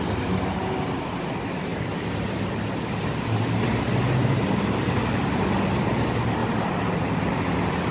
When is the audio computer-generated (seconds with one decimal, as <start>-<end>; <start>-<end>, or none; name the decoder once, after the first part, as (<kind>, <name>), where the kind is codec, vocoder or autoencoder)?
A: none